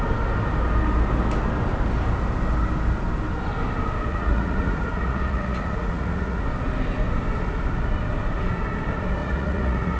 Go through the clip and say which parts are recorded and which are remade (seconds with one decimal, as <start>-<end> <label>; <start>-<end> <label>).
0.0-4.1 recorded; 4.1-6.4 remade; 6.4-9.2 recorded; 9.2-10.0 remade